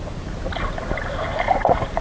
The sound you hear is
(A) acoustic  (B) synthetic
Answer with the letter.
B